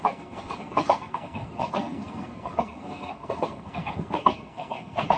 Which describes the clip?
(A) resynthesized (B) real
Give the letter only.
A